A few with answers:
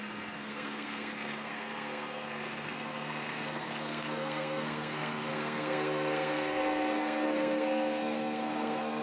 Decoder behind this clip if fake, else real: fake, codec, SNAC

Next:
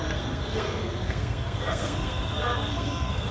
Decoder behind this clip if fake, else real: fake, codec, SNAC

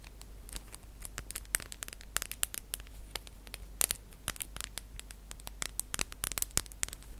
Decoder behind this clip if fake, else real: real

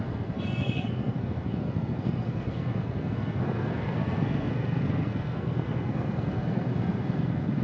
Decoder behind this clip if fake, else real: fake, codec, SNAC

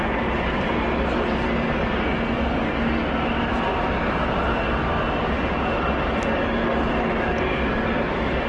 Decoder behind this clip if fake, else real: real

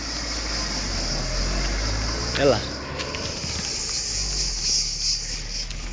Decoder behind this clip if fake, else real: real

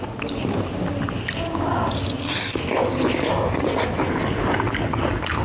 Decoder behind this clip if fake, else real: real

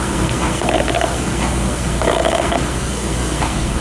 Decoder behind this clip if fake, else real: fake, codec, SNAC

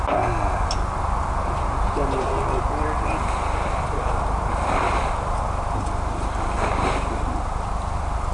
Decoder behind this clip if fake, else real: real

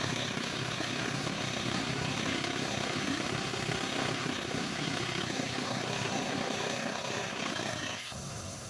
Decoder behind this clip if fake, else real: fake, codec, SNAC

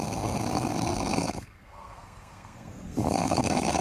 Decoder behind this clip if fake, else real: fake, codec, SNAC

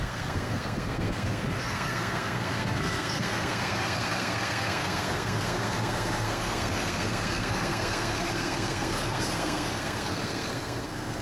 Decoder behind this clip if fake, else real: fake, codec, SNAC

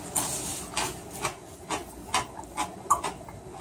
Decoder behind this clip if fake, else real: real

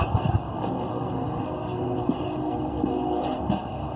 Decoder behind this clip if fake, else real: fake, codec, SNAC